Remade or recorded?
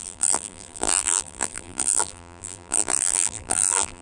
remade